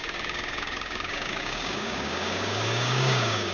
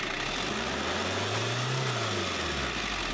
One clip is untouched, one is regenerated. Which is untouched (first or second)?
second